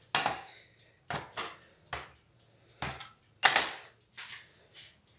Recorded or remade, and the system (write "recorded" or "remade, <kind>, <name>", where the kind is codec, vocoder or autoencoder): recorded